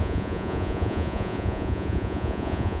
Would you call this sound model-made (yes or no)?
yes